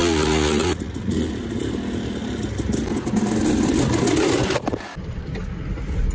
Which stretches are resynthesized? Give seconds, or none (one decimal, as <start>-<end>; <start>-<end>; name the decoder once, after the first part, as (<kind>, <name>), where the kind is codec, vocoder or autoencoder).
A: 0.0-1.3 (vocoder, Vocos)